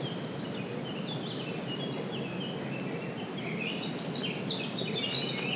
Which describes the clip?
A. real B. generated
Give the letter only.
A